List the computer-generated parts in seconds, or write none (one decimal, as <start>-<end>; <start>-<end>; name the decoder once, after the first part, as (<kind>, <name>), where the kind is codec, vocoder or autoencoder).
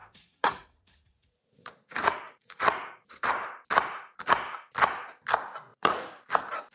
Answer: 0.0-3.3 (vocoder, Vocos); 5.7-6.3